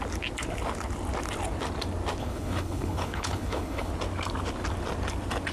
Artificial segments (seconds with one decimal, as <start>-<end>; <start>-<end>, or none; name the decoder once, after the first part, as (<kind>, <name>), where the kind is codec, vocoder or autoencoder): 2.2-3.9 (codec, HILCodec)